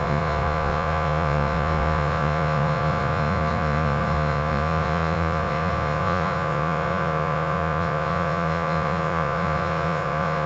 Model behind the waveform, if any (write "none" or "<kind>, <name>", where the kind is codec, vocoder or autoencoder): vocoder, Vocos